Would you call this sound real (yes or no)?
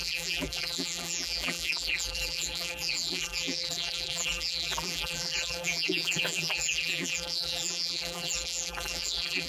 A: no